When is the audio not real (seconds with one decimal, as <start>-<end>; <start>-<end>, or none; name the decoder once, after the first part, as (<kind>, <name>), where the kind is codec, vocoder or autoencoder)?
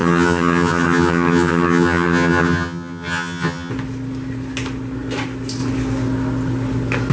0.0-3.7 (vocoder, HiFi-GAN)